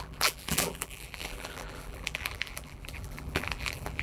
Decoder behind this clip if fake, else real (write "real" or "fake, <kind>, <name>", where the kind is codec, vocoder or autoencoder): fake, vocoder, BigVGAN v2